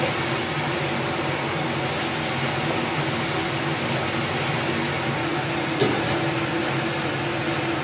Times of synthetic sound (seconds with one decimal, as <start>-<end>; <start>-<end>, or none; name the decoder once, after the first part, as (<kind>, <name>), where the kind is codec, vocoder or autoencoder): none